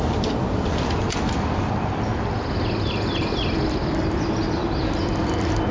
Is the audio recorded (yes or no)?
yes